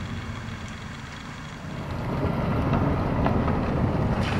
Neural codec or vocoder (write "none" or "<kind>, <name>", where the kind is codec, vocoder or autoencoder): none